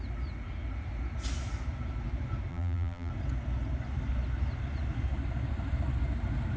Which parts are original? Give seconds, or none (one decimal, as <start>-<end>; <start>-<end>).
0.0-2.5; 3.1-6.6